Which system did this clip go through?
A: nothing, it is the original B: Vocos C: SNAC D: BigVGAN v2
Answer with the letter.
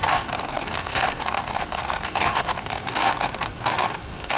C